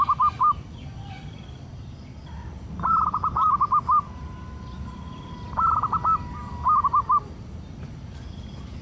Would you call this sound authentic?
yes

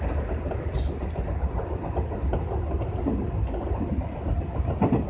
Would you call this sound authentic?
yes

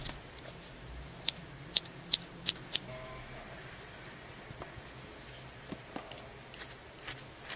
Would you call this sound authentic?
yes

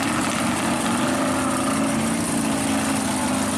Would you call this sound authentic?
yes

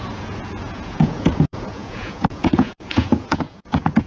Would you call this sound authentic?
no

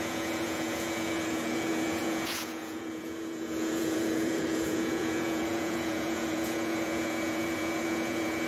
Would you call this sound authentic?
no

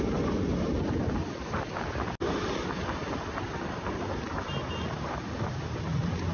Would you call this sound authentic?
yes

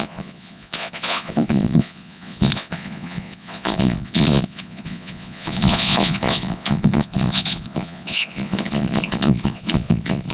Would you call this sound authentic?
no